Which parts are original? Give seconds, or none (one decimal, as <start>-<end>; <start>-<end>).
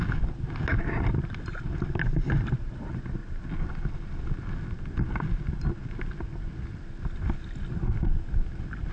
0.0-8.9